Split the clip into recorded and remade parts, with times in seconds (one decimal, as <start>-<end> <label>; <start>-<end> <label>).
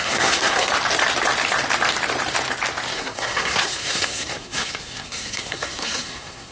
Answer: 0.0-0.7 remade; 0.7-2.9 recorded; 2.9-6.5 remade